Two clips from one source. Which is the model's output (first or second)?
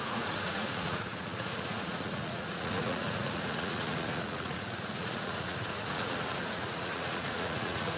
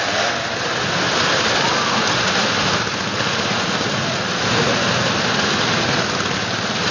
first